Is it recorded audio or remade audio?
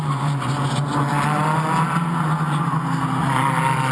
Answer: recorded